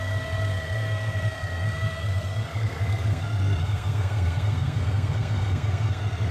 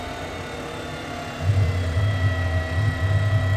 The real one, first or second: second